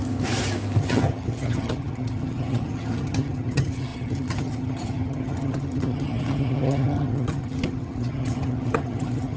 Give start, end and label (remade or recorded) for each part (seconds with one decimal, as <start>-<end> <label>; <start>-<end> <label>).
0.0-0.8 recorded; 0.8-9.4 remade